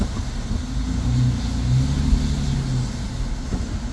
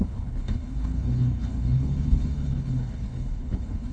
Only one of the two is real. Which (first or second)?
first